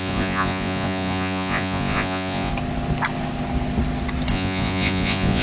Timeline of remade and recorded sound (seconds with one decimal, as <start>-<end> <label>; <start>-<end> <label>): 0.0-2.5 remade; 2.5-4.3 recorded; 4.3-5.4 remade

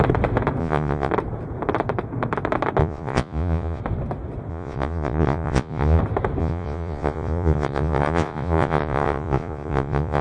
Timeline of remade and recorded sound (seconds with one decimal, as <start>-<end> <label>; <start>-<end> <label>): 0.0-0.6 recorded; 0.6-1.1 remade; 1.1-2.8 recorded; 2.8-3.8 remade; 3.8-4.5 recorded; 4.5-6.0 remade; 6.0-6.4 recorded; 6.4-10.2 remade

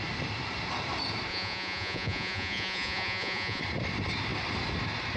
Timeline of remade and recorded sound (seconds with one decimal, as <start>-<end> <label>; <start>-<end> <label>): 0.0-1.3 recorded; 1.3-3.6 remade; 3.6-5.2 recorded

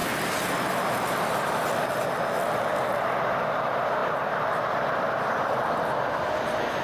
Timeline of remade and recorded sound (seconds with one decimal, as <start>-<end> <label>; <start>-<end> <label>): 0.0-6.8 recorded

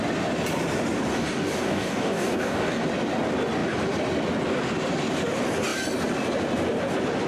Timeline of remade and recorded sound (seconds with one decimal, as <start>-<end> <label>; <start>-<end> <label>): 0.0-1.1 recorded; 1.1-2.8 remade; 2.8-7.3 recorded

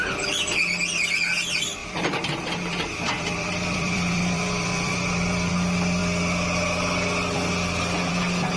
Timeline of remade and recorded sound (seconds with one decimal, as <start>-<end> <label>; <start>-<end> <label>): 0.0-1.8 recorded; 1.8-5.5 remade; 5.5-8.6 recorded

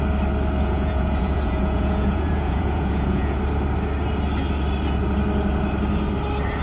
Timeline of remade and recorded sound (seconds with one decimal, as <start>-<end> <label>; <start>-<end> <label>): 0.0-0.6 recorded; 0.6-3.4 remade; 3.4-6.6 recorded

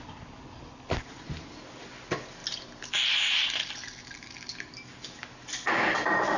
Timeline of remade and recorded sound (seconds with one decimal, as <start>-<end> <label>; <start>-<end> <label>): 0.0-6.4 recorded